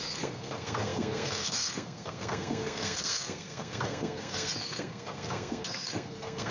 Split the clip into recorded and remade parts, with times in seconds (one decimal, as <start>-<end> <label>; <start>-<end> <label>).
0.0-6.5 remade